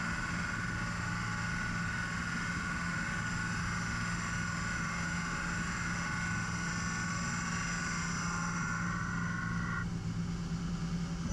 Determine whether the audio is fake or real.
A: real